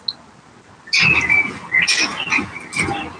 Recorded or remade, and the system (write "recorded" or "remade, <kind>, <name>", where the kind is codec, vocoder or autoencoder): recorded